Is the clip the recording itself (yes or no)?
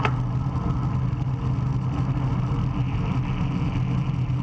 yes